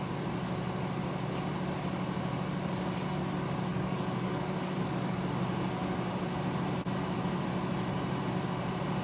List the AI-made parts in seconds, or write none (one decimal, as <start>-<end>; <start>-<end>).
3.7-5.2